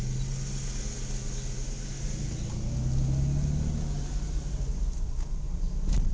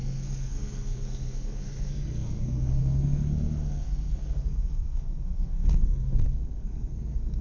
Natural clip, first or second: first